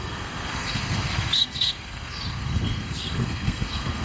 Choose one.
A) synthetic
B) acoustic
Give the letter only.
A